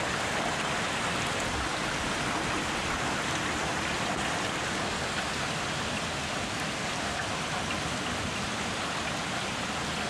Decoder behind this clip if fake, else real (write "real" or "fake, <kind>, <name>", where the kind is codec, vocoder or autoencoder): real